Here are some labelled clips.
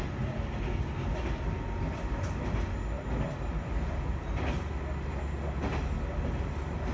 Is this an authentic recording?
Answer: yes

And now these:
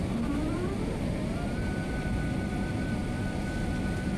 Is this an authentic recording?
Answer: yes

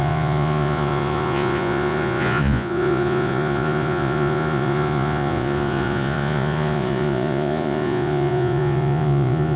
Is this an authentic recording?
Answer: no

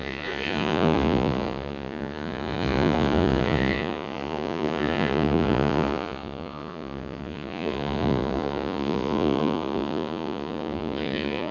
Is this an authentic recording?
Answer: no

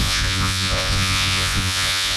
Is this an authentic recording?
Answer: no